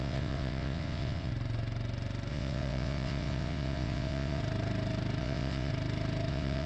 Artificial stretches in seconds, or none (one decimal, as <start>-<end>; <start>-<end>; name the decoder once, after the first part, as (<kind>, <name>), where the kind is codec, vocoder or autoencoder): 0.0-1.3 (vocoder, WaveNeXt); 2.3-4.4; 5.2-5.7; 6.3-6.7